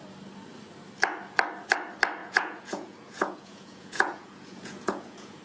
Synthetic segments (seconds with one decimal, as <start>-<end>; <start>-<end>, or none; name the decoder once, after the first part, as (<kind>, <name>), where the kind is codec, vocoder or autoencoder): 2.2-5.4 (vocoder, Vocos)